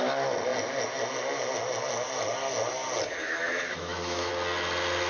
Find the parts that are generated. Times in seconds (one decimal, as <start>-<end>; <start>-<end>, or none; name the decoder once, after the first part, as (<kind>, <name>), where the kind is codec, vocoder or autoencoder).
3.2-4.3 (autoencoder, DAC-VAE)